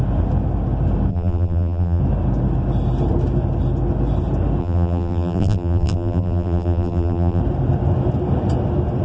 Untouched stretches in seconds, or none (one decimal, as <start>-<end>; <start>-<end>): 0.0-1.1; 2.0-4.6; 7.4-9.0